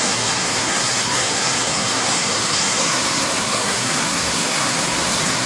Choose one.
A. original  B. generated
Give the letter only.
B